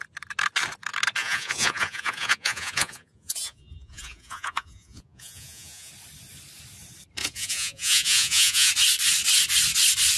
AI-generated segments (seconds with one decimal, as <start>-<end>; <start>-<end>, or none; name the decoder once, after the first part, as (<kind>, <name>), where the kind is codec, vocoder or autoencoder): 1.2-5.9 (vocoder, Vocos); 7.2-8.7